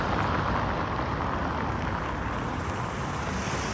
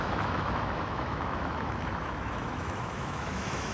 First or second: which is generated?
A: second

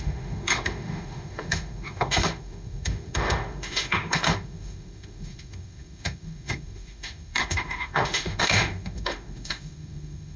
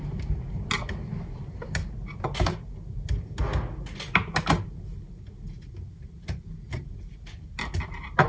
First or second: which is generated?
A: first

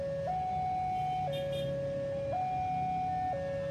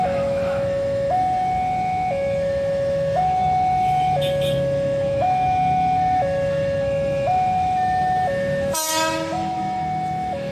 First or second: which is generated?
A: second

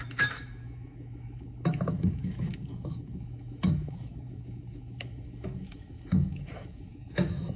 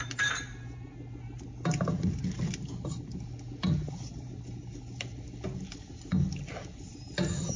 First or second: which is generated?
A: first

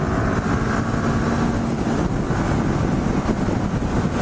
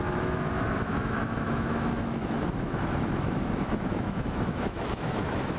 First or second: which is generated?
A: second